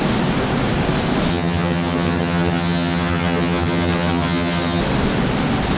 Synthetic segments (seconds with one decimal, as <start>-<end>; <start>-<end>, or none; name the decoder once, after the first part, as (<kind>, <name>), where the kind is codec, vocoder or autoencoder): 1.3-4.8 (vocoder, HiFi-GAN)